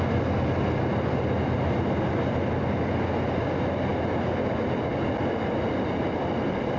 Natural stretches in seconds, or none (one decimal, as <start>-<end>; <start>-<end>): 0.0-6.8